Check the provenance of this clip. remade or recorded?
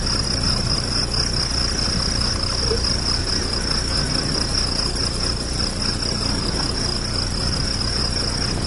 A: recorded